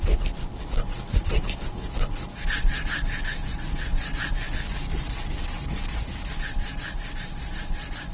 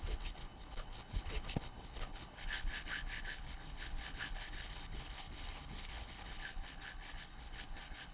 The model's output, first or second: second